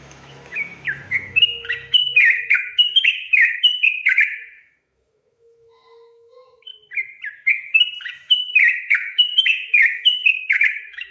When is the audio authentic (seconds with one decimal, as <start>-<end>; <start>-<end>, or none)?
6.7-8.0